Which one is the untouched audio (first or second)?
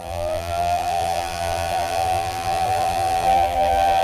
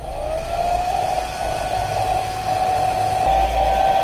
second